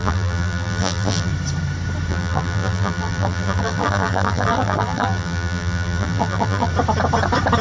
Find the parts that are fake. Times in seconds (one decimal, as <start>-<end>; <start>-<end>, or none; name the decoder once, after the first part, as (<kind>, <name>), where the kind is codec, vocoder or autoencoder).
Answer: 0.0-1.3 (vocoder, BigVGAN v2); 2.1-6.7